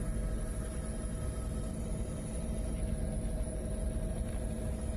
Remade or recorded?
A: remade